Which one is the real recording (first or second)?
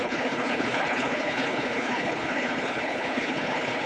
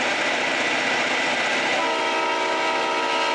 second